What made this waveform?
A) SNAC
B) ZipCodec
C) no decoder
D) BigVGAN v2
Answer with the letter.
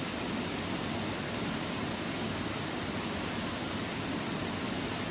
C